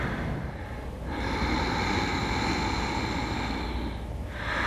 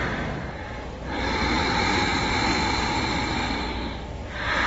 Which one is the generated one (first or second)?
second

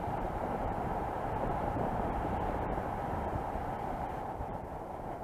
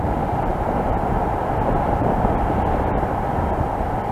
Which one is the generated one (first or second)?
first